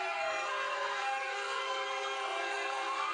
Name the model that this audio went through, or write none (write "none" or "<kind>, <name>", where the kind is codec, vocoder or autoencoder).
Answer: codec, SNAC